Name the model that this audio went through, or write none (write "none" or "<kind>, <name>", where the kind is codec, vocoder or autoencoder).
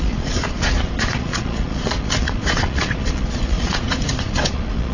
vocoder, Vocos